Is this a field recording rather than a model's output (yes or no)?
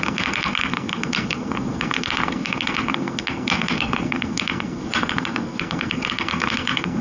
no